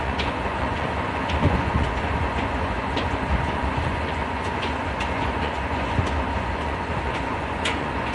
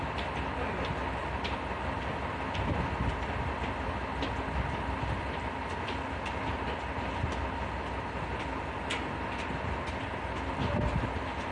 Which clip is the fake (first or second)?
first